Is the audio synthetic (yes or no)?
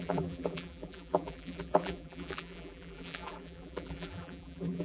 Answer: yes